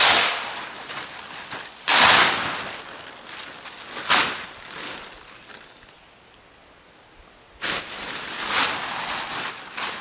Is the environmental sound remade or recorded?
recorded